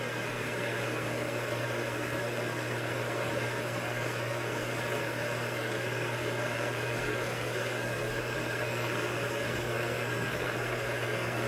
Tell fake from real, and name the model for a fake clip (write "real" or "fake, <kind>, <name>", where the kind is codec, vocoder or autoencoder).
fake, codec, SNAC